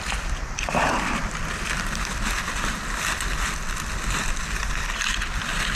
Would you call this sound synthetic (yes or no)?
no